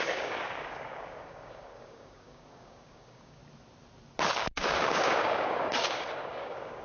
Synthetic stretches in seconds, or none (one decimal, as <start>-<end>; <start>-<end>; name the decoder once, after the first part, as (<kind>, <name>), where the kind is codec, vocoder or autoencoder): 0.0-3.4 (codec, DAC); 4.3-6.8